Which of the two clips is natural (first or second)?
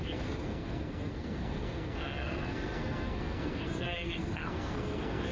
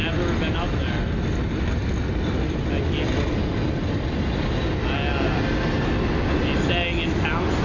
second